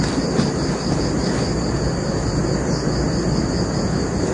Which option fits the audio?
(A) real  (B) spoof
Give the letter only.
A